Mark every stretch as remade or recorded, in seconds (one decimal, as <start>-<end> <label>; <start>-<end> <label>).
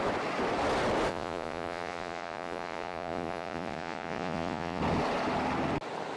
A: 0.0-1.1 recorded; 1.1-4.8 remade; 4.8-6.2 recorded